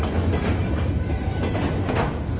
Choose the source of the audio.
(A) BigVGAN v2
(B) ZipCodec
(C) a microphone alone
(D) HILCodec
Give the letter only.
C